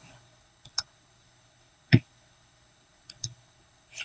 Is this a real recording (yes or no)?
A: no